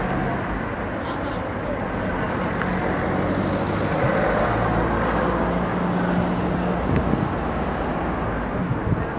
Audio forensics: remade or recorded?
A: recorded